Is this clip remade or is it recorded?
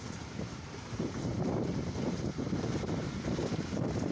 remade